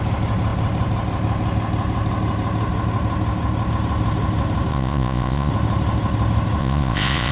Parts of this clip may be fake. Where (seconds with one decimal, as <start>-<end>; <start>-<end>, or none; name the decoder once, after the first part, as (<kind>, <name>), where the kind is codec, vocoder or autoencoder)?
4.7-5.5 (vocoder, Vocos); 6.6-7.3